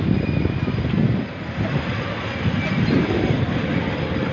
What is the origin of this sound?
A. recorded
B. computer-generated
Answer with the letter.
A